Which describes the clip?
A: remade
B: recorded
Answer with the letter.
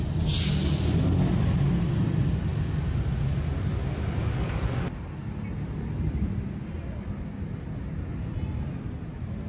B